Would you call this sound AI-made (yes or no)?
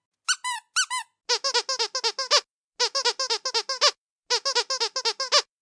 no